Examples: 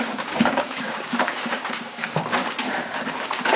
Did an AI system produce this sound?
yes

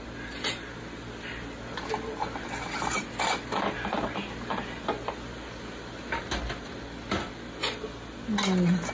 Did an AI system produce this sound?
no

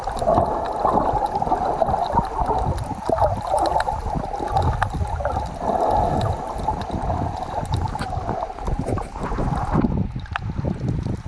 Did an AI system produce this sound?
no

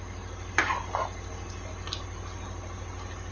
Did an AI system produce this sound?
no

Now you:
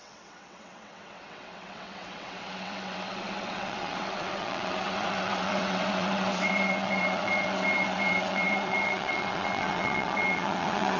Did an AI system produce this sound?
yes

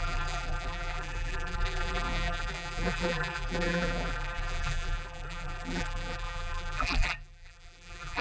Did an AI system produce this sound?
yes